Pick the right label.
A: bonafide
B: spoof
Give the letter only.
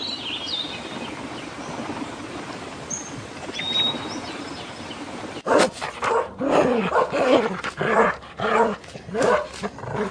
B